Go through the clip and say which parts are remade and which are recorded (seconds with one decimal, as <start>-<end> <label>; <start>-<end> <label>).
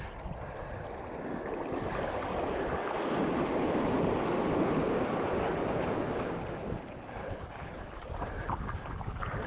0.0-7.2 recorded; 7.2-7.8 remade; 7.8-9.5 recorded